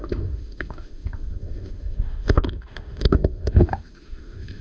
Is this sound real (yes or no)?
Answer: no